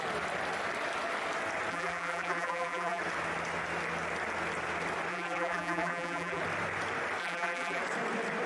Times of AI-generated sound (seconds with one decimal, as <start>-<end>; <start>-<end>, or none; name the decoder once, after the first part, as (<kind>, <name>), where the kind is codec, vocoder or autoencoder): 1.7-3.0 (vocoder, BigVGAN v2); 5.1-6.4; 7.2-7.8